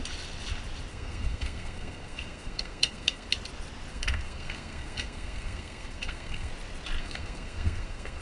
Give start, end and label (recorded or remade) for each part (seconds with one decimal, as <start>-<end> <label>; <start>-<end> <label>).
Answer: 0.0-0.9 recorded; 0.9-3.3 remade; 3.3-3.9 recorded; 3.9-6.5 remade; 6.5-7.0 recorded; 7.0-8.2 remade